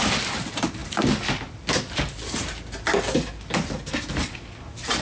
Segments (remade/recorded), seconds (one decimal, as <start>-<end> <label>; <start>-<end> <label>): 0.0-5.0 recorded